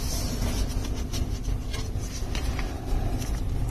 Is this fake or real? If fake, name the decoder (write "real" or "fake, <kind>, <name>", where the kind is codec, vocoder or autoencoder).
real